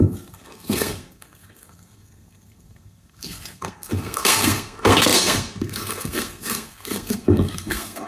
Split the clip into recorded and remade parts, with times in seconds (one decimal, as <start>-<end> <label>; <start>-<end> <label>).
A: 0.0-8.1 remade